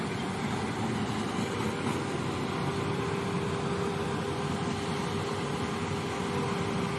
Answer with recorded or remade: recorded